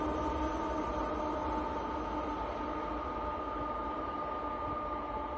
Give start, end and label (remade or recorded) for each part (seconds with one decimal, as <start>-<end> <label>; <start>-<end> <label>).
0.0-5.4 recorded